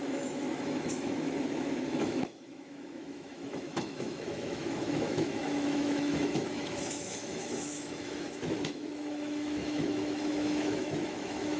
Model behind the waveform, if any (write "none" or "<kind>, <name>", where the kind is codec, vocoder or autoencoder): autoencoder, DAC-VAE